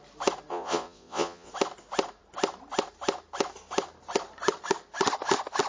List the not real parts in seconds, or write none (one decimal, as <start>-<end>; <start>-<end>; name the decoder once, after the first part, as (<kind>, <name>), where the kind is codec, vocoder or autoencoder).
0.5-1.5 (vocoder, Vocos)